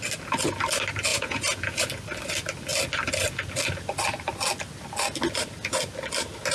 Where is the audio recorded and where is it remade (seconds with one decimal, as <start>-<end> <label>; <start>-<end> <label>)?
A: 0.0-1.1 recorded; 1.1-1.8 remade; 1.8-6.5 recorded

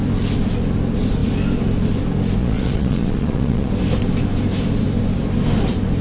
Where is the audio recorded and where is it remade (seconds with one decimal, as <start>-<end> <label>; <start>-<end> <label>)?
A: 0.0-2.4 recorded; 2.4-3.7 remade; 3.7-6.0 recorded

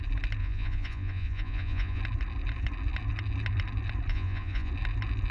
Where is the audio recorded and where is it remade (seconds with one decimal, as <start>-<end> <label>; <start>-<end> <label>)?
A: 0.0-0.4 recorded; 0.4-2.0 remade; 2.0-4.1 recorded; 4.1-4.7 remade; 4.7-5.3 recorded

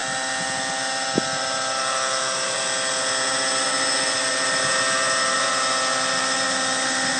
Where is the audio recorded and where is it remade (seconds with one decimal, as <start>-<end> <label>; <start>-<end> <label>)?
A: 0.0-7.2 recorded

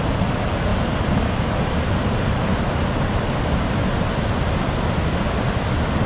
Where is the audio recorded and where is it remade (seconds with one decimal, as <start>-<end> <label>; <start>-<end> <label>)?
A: 0.0-6.1 recorded